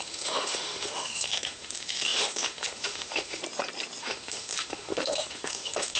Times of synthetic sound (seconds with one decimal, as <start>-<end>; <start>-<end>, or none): 0.0-3.4; 4.0-6.0